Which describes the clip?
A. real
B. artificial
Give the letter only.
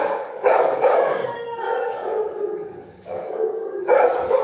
B